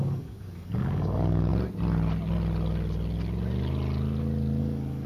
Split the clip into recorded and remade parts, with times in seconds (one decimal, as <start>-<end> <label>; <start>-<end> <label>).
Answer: 0.0-1.5 remade; 1.5-4.6 recorded; 4.6-5.1 remade